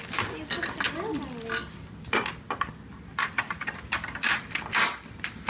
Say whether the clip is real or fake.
real